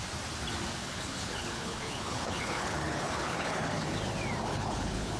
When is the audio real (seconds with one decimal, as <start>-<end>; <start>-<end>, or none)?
0.0-0.8; 3.9-4.5